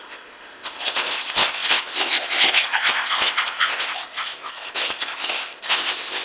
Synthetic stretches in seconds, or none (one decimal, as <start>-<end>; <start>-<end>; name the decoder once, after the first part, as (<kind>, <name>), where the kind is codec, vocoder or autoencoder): 0.0-6.2 (codec, ZipCodec)